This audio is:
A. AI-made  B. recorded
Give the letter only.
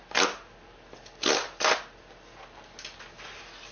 B